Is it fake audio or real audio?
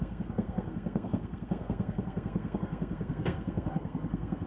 fake